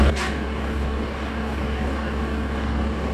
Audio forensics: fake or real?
fake